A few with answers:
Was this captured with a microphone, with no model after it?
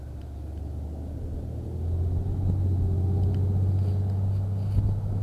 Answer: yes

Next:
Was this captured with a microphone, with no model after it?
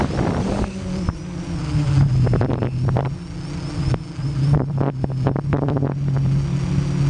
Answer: yes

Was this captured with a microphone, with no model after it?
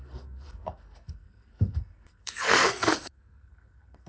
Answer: no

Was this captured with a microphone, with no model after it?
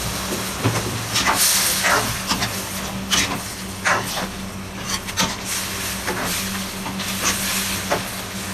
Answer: yes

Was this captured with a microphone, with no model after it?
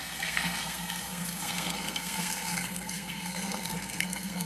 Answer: no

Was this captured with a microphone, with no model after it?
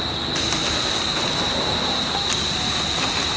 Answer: yes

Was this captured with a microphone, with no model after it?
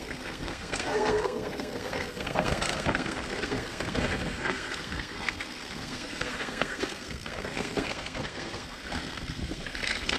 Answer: no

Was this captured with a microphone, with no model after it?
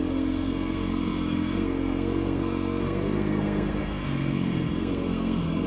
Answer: no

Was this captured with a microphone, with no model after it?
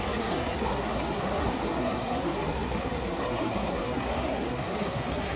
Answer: no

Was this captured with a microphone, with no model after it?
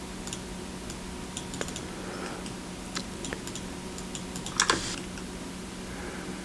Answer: yes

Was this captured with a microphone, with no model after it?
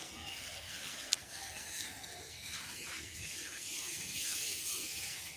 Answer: no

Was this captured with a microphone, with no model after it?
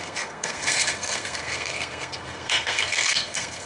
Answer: no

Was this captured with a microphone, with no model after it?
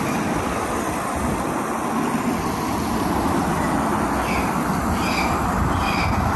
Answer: yes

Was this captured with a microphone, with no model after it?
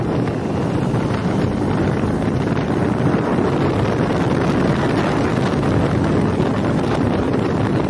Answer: yes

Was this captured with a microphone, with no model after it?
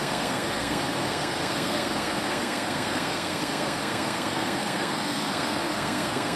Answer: no